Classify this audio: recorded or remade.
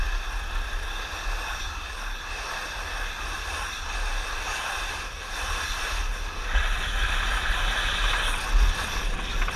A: recorded